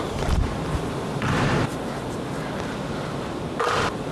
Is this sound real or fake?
fake